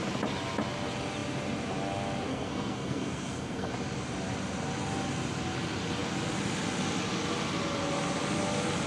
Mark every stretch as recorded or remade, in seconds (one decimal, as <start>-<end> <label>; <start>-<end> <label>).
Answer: 0.0-2.3 recorded; 2.3-3.7 remade; 3.7-8.9 recorded